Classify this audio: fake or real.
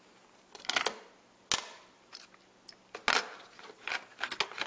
real